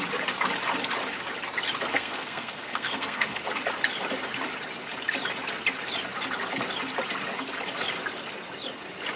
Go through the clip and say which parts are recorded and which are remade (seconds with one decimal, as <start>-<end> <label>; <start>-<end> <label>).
0.0-1.9 recorded; 1.9-3.4 remade; 3.4-9.2 recorded